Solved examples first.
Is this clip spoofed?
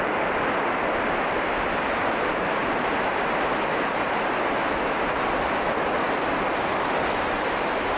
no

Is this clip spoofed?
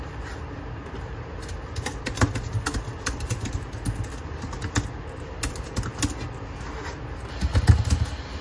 no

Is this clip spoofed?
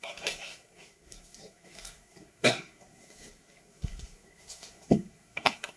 yes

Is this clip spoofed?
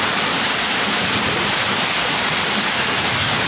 no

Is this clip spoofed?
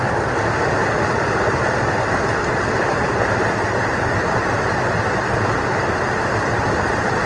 no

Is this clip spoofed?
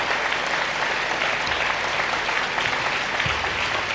no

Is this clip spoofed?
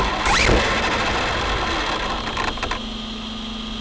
no